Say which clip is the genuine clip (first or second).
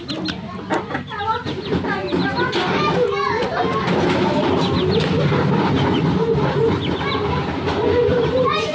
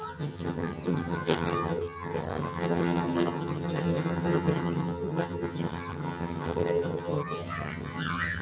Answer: first